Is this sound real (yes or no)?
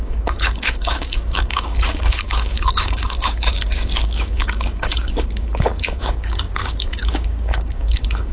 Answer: no